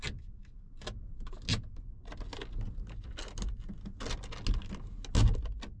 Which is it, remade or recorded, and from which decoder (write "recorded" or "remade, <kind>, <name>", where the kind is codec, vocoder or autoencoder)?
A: recorded